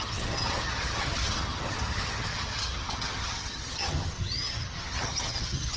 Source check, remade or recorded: remade